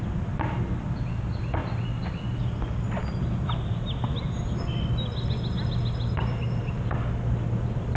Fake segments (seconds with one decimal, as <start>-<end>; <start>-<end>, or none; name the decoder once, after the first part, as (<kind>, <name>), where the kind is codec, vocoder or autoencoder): none